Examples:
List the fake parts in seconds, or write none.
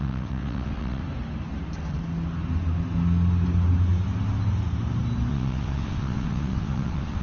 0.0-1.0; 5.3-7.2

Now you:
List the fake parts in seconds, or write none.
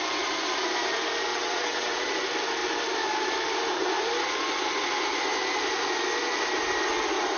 1.3-2.0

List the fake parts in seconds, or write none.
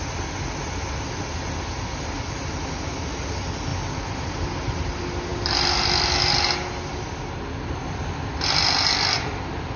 none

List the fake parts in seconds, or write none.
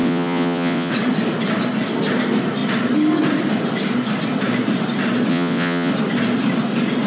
0.0-0.9; 5.3-5.9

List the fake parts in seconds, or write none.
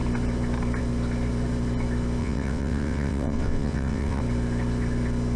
2.2-4.2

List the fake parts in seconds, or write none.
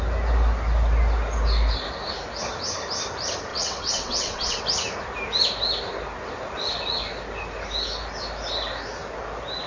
3.5-4.6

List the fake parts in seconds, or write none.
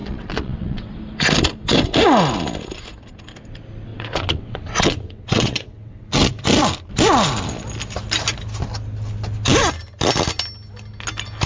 0.0-0.9; 3.9-6.3